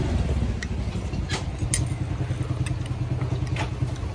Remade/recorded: recorded